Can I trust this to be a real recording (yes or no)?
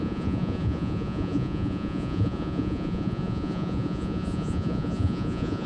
no